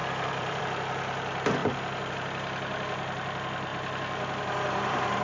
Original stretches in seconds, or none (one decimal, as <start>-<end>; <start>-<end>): 0.6-3.7